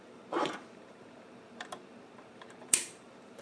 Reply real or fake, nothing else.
fake